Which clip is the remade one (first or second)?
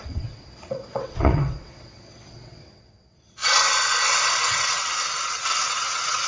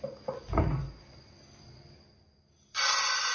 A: first